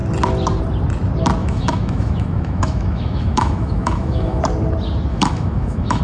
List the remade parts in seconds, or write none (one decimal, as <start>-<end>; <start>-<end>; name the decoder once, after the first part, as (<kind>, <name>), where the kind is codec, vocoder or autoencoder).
1.4-4.4 (autoencoder, DAC-VAE); 5.1-6.0